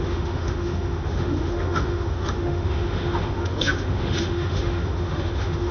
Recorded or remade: remade